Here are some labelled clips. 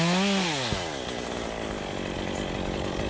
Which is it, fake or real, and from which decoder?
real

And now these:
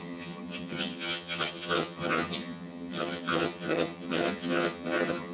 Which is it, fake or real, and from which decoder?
fake, vocoder, HiFi-GAN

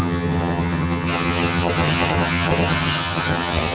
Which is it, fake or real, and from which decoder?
fake, vocoder, HiFi-GAN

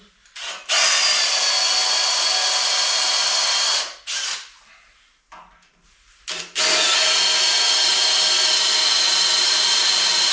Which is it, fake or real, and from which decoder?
real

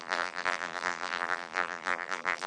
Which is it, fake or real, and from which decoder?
fake, vocoder, BigVGAN v2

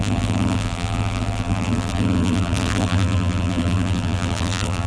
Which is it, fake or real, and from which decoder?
fake, vocoder, BigVGAN v2